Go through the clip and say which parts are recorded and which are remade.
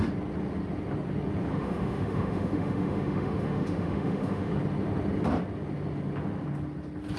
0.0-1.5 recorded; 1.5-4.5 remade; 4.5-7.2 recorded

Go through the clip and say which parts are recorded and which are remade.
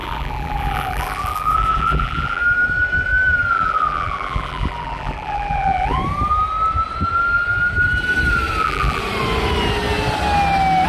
0.0-2.4 remade; 2.4-3.5 recorded; 3.5-6.0 remade; 6.0-8.6 recorded; 8.6-9.0 remade; 9.0-10.9 recorded